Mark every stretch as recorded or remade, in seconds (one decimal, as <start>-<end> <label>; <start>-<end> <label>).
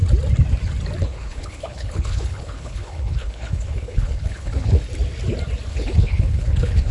0.0-1.0 recorded; 1.0-4.8 remade; 4.8-5.7 recorded; 5.7-6.9 remade